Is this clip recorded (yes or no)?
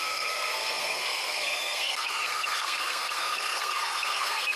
no